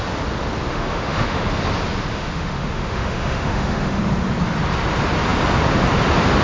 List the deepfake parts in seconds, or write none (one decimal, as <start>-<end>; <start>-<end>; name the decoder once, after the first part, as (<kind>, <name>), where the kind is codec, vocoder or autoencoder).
0.7-1.4 (autoencoder, DAC-VAE); 2.1-4.0